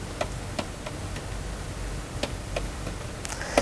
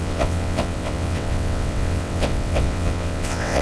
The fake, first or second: second